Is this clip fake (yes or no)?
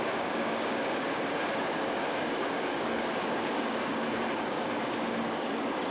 yes